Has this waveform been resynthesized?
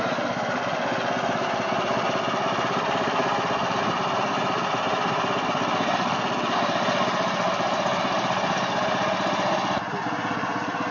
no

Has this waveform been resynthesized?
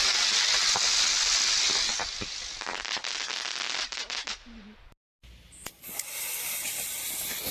no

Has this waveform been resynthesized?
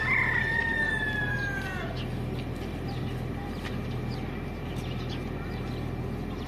no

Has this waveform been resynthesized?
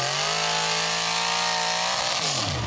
no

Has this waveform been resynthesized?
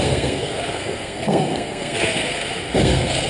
yes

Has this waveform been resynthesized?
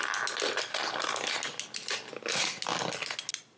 no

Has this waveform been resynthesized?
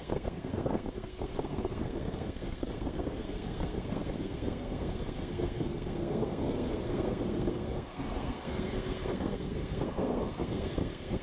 yes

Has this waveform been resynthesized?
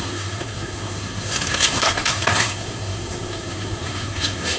yes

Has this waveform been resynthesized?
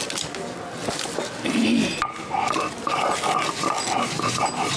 no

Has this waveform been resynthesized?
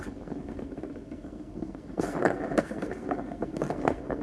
yes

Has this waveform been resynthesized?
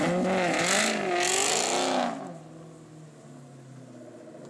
no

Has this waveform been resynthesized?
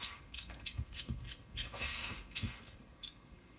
yes